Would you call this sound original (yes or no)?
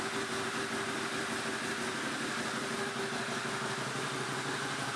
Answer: yes